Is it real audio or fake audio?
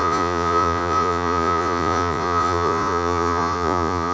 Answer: fake